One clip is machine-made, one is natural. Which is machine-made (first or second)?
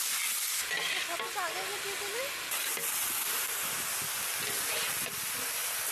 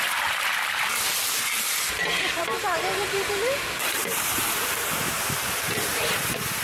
second